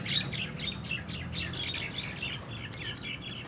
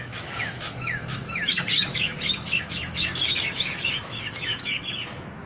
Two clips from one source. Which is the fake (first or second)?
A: second